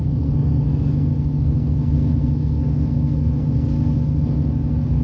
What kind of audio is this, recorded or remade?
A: remade